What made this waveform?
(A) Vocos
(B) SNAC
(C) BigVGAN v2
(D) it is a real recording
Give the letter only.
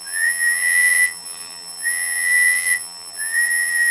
C